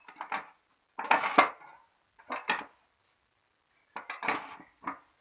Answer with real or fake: real